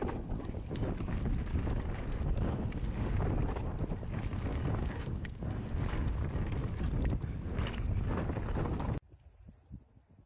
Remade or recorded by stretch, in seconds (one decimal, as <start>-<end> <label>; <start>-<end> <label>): 0.0-4.5 recorded; 4.5-5.8 remade; 5.8-10.3 recorded